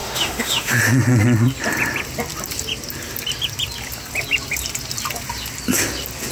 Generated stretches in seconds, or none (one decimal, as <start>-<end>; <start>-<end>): 0.0-0.8